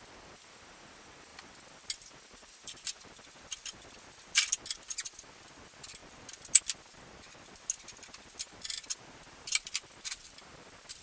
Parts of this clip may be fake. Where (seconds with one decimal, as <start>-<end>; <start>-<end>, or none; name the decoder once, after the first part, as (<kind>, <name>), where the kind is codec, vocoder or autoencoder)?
none